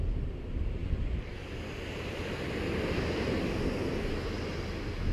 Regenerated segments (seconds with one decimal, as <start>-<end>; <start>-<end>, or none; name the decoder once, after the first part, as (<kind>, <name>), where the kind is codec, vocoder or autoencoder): none